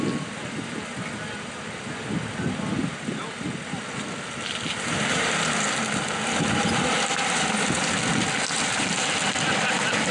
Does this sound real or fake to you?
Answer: real